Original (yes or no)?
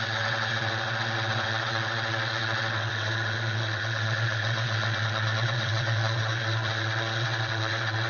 no